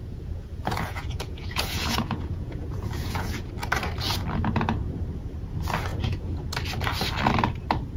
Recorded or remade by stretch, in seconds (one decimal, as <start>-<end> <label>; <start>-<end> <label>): 0.0-3.5 remade; 3.5-5.9 recorded; 5.9-6.4 remade; 6.4-8.0 recorded